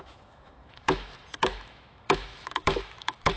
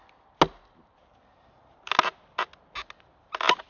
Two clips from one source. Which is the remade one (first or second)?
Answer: first